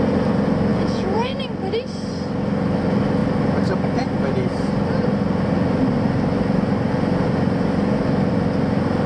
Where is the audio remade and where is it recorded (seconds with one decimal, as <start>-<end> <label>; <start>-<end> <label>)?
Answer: 0.0-0.7 recorded; 0.7-1.4 remade; 1.4-9.1 recorded